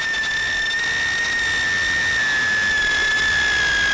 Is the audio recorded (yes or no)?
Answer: yes